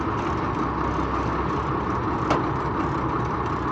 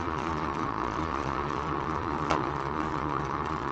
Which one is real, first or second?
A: first